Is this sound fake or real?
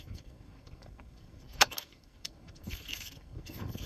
fake